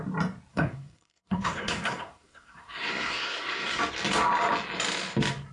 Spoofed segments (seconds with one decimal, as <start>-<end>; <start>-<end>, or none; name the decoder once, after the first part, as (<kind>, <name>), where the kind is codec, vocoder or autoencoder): 0.5-3.8 (codec, SNAC)